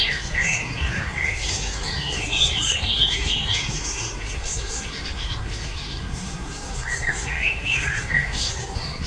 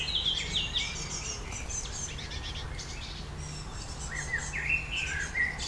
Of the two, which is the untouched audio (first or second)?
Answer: second